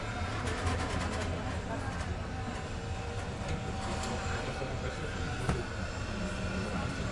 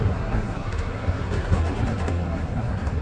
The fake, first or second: second